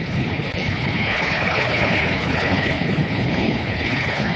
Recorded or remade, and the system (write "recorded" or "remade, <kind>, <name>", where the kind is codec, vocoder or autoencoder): remade, codec, HILCodec